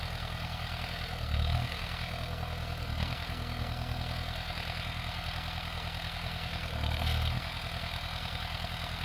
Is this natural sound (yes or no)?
no